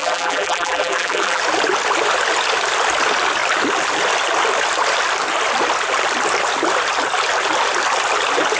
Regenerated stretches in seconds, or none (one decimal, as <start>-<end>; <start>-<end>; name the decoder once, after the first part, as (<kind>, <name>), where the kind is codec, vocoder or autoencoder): 0.0-1.4 (vocoder, BigVGAN v2)